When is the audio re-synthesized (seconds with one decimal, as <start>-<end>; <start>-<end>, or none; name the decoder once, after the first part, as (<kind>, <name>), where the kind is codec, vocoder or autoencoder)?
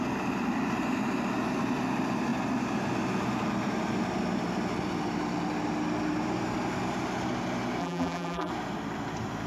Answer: 7.8-8.5 (vocoder, BigVGAN v2)